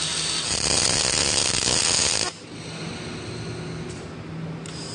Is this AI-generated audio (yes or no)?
no